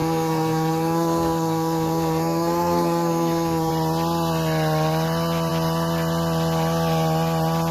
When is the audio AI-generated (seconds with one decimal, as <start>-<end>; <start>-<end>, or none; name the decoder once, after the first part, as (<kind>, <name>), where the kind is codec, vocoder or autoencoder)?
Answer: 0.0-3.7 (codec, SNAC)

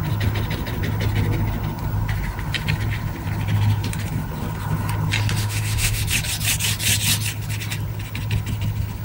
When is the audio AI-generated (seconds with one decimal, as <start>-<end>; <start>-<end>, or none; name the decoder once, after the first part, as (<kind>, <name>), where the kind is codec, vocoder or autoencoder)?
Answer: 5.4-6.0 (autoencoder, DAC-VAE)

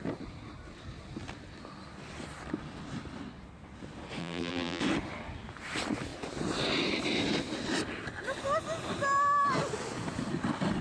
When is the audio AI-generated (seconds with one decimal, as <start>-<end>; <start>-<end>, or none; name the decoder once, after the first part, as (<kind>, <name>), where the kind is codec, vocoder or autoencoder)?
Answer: 4.2-4.8 (vocoder, BigVGAN v2)

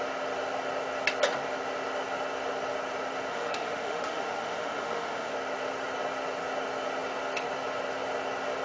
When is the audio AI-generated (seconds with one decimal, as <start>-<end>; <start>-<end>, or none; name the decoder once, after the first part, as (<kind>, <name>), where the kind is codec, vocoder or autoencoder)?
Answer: 3.3-5.3 (autoencoder, DAC-VAE)

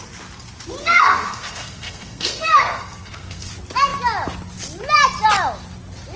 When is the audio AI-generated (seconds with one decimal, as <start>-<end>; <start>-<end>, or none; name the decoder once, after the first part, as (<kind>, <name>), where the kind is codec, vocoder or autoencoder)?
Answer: 0.8-3.5 (codec, SNAC)

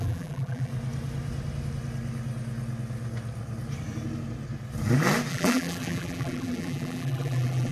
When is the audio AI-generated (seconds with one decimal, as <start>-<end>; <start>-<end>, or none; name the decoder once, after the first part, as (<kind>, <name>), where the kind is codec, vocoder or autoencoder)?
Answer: 0.0-0.7 (vocoder, BigVGAN v2); 5.3-7.7